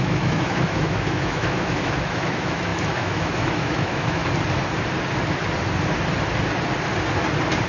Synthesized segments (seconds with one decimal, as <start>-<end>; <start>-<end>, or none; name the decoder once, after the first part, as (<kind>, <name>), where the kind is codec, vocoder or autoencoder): 0.0-4.2 (autoencoder, DAC-VAE)